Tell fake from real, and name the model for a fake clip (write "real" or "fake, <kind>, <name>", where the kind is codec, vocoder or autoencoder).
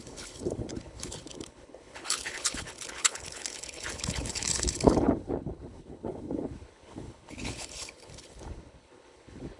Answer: fake, codec, HILCodec